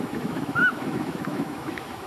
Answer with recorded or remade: remade